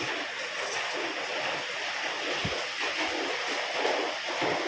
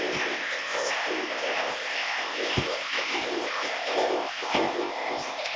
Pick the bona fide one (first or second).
first